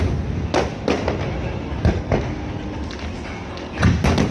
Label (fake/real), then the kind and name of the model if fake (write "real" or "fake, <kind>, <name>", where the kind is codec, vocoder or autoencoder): real